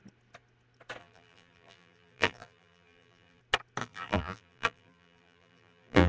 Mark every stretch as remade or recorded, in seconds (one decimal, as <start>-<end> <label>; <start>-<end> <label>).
0.0-1.0 recorded; 1.0-3.4 remade; 3.4-3.8 recorded; 3.8-6.1 remade